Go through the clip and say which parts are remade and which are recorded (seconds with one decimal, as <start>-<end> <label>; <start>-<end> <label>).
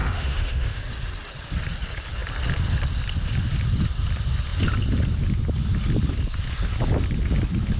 0.0-0.8 remade; 0.8-7.8 recorded